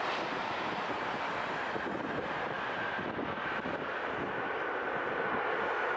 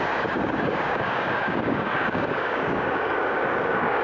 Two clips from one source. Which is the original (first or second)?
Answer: first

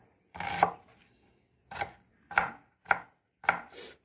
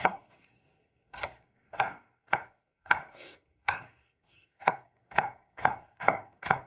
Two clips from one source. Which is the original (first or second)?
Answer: first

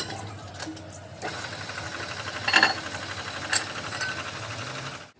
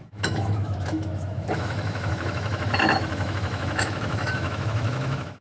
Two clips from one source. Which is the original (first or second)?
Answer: first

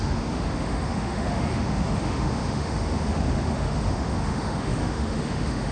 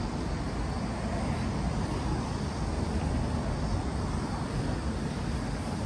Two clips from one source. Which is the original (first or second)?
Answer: second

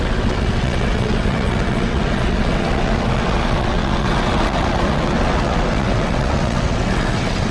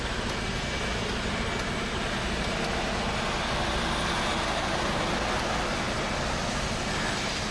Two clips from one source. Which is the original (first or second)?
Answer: second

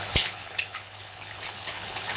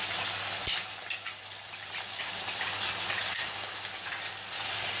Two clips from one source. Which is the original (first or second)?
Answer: second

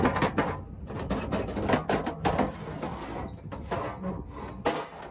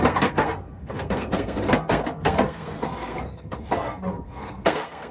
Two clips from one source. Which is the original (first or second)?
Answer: first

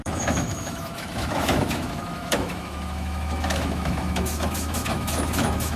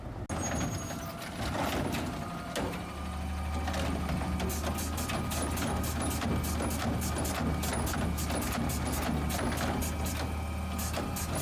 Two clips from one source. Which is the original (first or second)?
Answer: second